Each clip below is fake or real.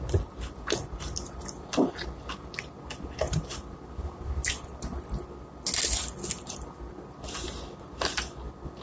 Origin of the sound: real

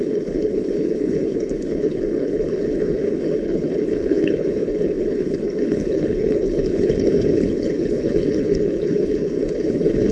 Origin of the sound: fake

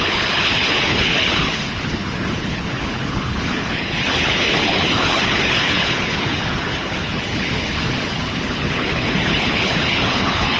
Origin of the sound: fake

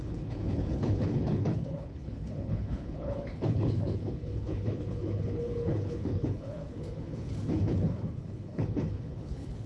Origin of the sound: fake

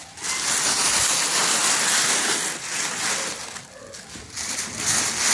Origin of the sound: real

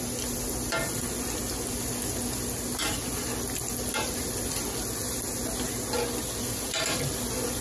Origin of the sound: real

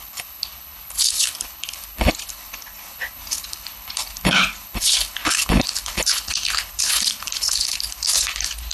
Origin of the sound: fake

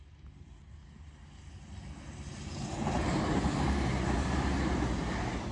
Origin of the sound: real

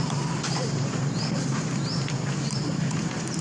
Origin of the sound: real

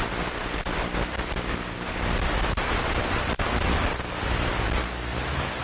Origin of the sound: real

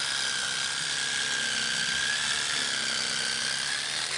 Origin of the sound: real